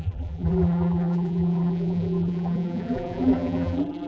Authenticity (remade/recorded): remade